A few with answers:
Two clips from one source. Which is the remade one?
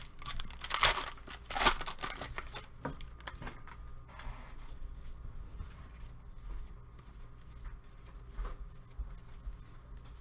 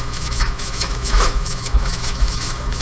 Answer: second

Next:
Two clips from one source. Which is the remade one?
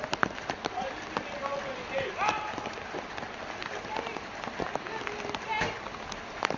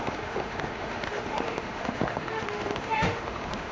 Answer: second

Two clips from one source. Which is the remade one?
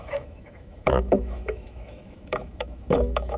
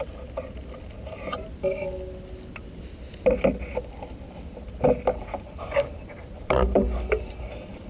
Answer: first